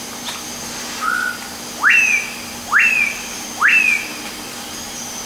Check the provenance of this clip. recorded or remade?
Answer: recorded